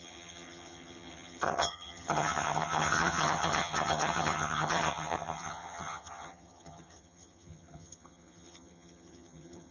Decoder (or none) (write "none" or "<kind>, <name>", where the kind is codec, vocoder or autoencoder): vocoder, HiFi-GAN